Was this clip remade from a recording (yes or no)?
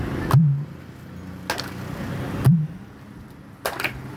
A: no